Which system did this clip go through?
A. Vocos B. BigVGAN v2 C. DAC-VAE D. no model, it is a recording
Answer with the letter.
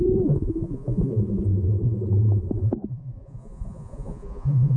A